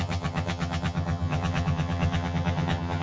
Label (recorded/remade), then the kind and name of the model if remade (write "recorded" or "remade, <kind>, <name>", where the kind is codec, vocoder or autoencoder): remade, vocoder, HiFi-GAN